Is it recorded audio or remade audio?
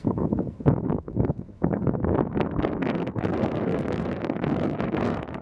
remade